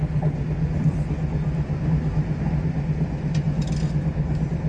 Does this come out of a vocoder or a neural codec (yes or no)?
no